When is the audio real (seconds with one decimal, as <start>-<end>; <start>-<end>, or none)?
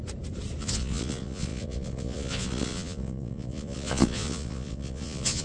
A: 0.0-0.6